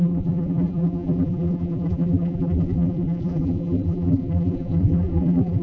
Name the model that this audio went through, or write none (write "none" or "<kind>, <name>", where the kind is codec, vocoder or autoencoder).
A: vocoder, BigVGAN v2